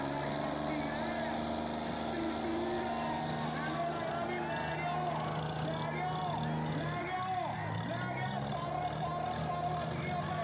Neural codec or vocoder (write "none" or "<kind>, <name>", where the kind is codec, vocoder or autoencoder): none